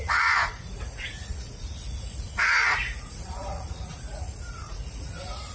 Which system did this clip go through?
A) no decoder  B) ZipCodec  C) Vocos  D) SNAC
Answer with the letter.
C